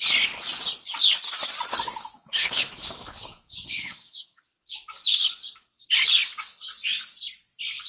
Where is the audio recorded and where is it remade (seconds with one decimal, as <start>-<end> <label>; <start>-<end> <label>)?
0.0-1.7 recorded; 1.7-4.4 remade; 4.4-7.9 recorded